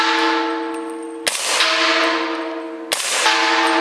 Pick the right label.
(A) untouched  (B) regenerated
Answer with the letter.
A